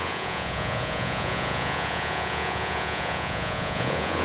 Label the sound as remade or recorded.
remade